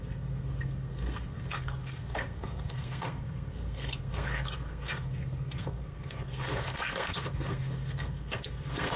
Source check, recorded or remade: remade